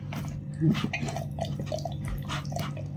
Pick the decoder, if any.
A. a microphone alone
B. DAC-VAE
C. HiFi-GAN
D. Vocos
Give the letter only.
A